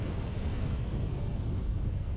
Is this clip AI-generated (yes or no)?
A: yes